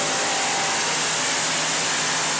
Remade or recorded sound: recorded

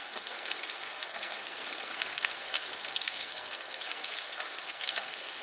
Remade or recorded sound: remade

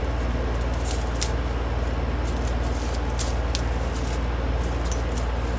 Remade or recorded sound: recorded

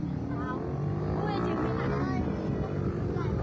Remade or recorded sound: recorded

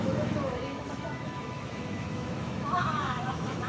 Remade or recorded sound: remade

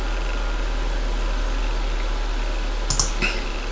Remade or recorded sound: recorded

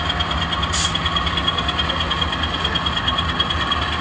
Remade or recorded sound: recorded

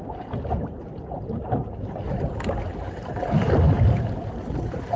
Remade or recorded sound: recorded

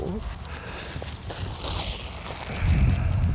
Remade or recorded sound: recorded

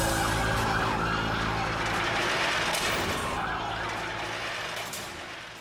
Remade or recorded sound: recorded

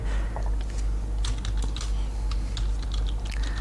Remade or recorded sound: recorded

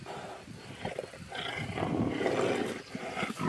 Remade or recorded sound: recorded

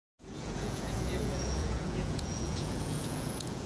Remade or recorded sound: remade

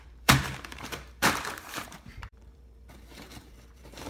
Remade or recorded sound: remade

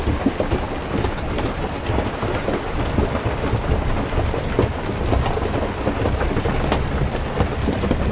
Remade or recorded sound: recorded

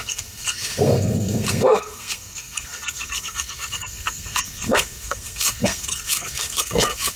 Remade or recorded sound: remade